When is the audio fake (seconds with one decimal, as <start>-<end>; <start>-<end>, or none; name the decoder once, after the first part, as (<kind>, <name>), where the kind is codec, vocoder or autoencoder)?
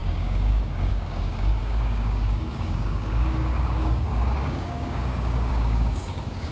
0.0-6.5 (codec, DAC)